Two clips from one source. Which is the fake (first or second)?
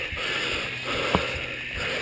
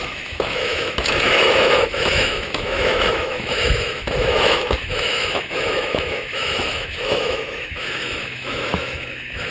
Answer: second